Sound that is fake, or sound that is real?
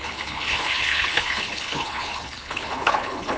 fake